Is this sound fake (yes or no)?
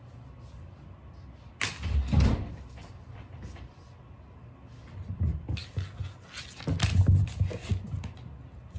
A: no